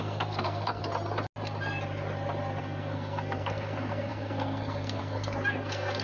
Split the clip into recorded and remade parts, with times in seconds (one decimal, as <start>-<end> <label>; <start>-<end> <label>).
0.0-0.8 remade; 0.8-2.6 recorded; 2.6-6.0 remade